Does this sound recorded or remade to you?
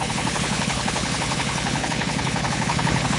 remade